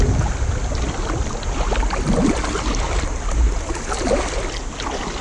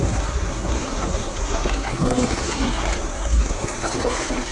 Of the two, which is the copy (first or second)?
second